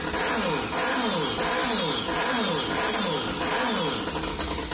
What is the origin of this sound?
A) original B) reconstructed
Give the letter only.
A